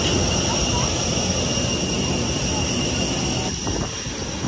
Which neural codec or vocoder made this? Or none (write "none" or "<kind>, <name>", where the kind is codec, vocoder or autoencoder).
none